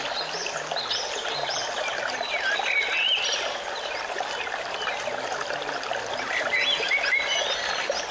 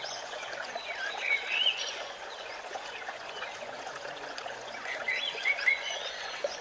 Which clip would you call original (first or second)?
first